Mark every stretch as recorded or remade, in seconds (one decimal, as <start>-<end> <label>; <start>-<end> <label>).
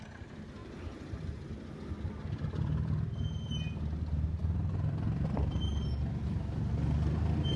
0.0-0.6 recorded; 0.6-1.5 remade; 1.5-4.4 recorded; 4.4-5.7 remade; 5.7-7.6 recorded